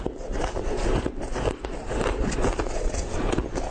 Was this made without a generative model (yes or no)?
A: yes